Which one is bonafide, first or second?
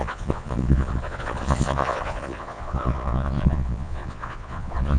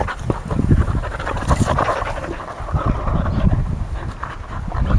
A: second